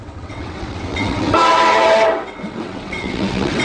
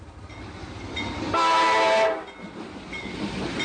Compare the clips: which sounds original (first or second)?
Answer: second